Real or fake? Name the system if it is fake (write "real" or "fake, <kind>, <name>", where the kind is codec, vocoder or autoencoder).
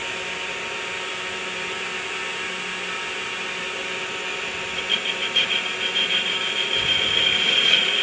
real